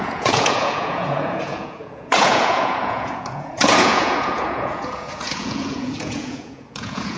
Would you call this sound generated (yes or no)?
yes